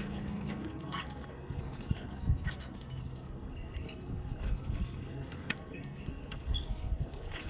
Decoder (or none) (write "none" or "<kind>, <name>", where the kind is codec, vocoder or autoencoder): codec, SNAC